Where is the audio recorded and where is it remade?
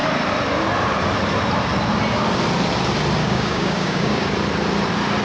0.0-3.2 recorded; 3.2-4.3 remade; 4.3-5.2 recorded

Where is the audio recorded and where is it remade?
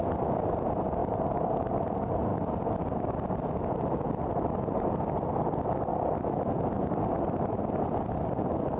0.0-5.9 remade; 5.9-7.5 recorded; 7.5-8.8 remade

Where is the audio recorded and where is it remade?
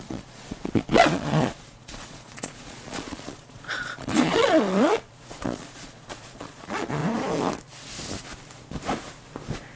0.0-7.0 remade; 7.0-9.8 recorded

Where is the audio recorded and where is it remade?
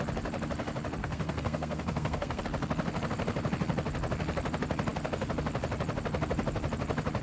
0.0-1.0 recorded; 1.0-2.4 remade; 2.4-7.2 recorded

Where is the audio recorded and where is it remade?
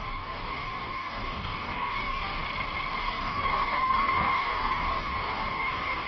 0.0-2.4 remade; 2.4-3.0 recorded; 3.0-6.1 remade